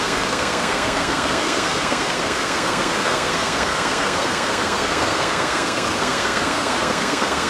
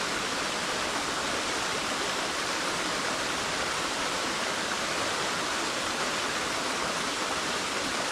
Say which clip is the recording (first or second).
second